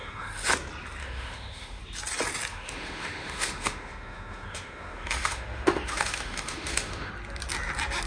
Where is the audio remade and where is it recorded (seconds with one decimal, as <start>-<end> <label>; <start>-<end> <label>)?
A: 0.0-0.5 remade; 0.5-1.0 recorded; 1.0-1.8 remade; 1.8-2.5 recorded; 2.5-7.1 remade; 7.1-8.1 recorded